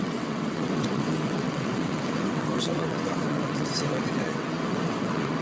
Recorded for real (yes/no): no